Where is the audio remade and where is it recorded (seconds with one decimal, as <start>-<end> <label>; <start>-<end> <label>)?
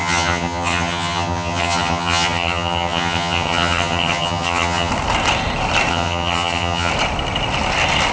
0.0-4.9 remade; 4.9-5.9 recorded; 5.9-6.9 remade; 6.9-8.1 recorded